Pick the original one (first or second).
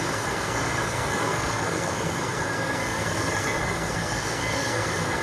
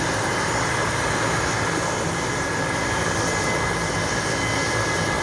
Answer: second